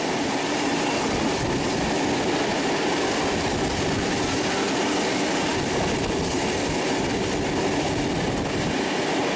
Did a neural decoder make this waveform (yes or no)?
no